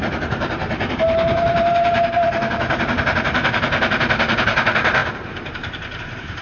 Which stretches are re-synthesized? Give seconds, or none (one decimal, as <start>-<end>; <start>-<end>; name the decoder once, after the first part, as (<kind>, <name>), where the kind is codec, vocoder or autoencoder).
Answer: 0.0-6.4 (vocoder, BigVGAN v2)